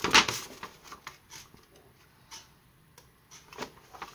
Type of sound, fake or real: real